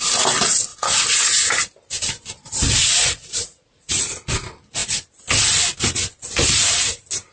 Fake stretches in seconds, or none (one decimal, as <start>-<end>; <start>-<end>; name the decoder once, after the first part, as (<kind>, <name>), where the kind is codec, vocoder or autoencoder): 2.9-4.1 (vocoder, Vocos)